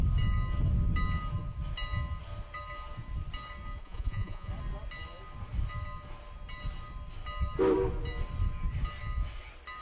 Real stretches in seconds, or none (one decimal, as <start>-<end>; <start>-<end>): 0.0-3.8; 4.5-9.8